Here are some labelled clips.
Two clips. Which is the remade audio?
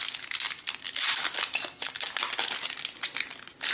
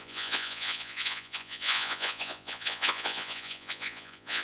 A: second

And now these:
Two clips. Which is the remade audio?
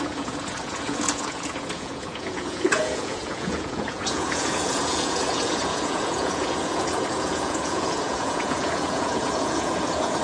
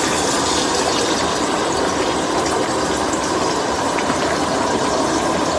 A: first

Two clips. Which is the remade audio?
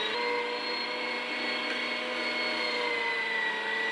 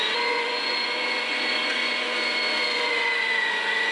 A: second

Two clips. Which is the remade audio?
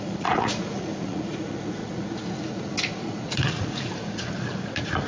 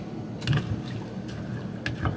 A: first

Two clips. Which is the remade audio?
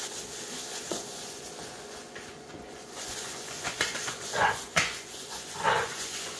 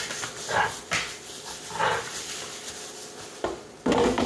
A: first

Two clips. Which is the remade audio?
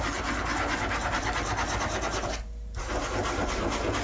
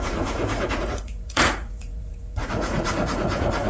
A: second